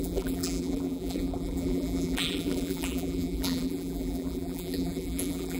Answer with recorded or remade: remade